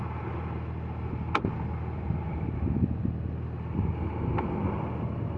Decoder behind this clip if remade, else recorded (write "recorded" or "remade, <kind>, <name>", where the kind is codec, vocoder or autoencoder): recorded